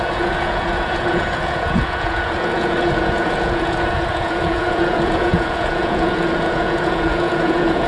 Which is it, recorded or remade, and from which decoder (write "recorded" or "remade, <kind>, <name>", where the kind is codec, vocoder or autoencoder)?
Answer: remade, vocoder, Vocos